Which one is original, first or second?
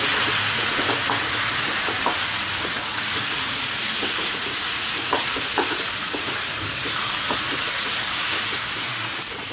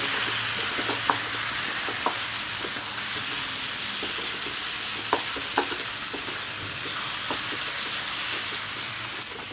second